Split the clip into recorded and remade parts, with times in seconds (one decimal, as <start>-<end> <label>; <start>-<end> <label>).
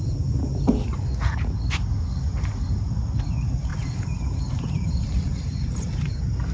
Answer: 0.0-6.5 recorded